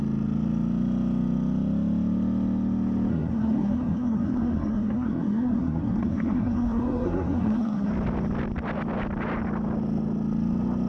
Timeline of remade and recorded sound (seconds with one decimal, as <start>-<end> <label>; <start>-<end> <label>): 0.0-3.1 recorded; 3.1-7.9 remade; 7.9-10.9 recorded